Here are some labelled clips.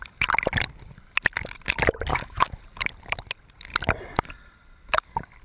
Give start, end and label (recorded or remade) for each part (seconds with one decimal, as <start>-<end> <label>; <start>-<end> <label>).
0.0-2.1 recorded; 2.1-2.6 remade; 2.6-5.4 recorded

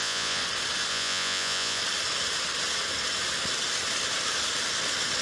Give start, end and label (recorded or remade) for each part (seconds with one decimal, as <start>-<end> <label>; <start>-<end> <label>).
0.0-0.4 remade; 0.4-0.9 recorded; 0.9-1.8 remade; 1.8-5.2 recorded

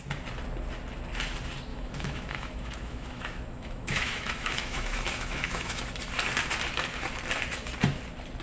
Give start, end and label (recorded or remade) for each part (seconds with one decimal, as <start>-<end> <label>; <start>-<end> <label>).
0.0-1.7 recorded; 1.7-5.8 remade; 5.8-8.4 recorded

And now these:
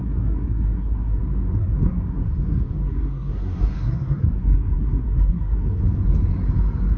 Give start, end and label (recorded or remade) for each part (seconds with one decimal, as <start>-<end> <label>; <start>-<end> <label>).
0.0-1.2 remade; 1.2-1.6 recorded; 1.6-5.8 remade; 5.8-7.0 recorded

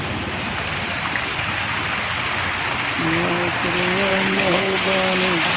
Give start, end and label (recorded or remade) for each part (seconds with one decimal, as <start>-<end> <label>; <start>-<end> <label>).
0.0-4.1 recorded; 4.1-4.8 remade; 4.8-5.6 recorded

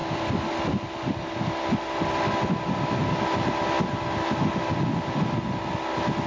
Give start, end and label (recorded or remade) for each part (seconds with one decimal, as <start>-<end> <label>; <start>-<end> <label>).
0.0-6.3 recorded